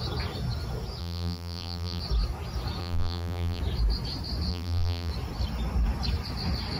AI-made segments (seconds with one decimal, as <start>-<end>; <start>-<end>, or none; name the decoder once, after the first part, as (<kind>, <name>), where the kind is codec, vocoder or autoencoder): 1.0-2.0 (vocoder, BigVGAN v2); 2.8-3.6; 4.5-5.1